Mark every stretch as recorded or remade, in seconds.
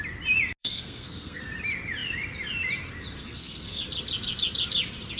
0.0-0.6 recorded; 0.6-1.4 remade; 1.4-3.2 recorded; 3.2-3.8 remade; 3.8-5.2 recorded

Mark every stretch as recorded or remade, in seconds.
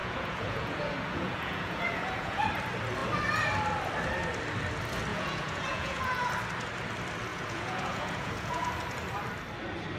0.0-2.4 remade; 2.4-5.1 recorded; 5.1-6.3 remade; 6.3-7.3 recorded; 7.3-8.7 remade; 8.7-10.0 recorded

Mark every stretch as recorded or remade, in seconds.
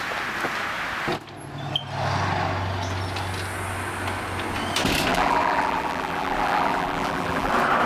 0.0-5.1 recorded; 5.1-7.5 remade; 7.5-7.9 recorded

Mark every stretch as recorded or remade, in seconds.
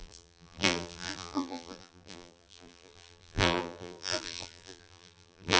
0.0-5.6 remade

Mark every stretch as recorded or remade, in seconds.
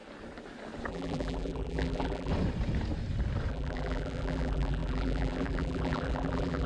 0.0-0.9 recorded; 0.9-2.3 remade; 2.3-3.5 recorded; 3.5-6.7 remade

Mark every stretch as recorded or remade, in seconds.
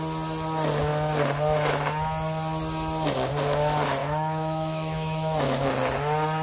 0.0-4.0 recorded; 4.0-5.7 remade; 5.7-6.4 recorded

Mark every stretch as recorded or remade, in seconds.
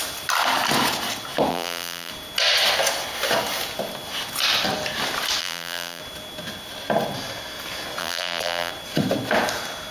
0.0-1.5 recorded; 1.5-2.1 remade; 2.1-5.4 recorded; 5.4-6.0 remade; 6.0-8.0 recorded; 8.0-8.7 remade; 8.7-9.9 recorded